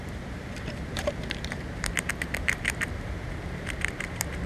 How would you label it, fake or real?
fake